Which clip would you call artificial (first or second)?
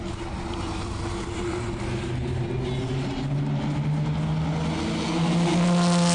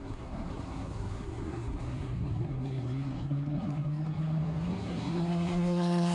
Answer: second